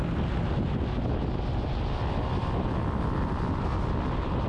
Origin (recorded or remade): recorded